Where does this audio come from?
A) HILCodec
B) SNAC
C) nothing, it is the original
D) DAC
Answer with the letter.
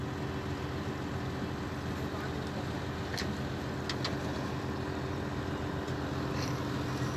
C